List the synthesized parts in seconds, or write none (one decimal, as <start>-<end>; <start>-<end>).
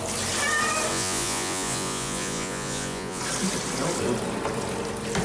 0.9-3.2